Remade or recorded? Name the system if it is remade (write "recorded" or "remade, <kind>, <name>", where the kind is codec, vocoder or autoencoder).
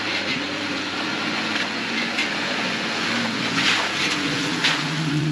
remade, vocoder, Vocos